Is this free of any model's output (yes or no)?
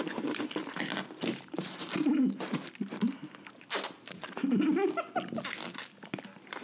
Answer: yes